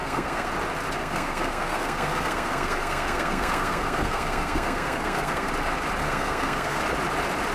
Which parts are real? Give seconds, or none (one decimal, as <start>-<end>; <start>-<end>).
0.5-1.0; 5.5-6.0; 6.8-7.5